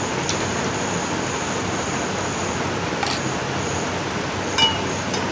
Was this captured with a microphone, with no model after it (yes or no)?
yes